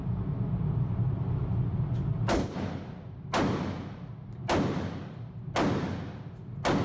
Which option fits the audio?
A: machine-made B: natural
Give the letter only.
B